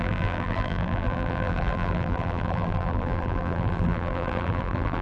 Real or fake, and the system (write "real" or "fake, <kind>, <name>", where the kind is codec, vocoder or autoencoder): fake, vocoder, BigVGAN v2